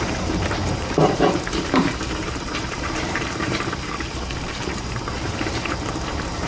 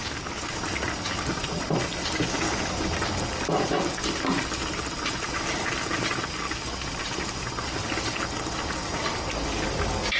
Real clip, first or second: second